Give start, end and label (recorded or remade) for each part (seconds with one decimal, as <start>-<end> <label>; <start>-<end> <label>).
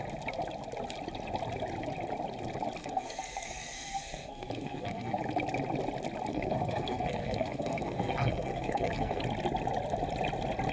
0.0-2.8 recorded; 2.8-5.2 remade; 5.2-6.3 recorded; 6.3-9.2 remade; 9.2-10.7 recorded